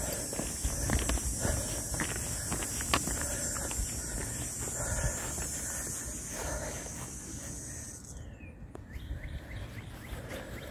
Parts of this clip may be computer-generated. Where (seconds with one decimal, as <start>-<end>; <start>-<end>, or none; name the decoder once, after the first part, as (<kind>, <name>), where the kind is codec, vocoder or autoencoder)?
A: 6.3-7.3 (codec, DAC)